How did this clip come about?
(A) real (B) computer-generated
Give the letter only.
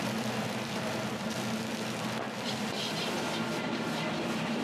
A